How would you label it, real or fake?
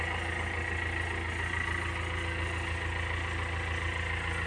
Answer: real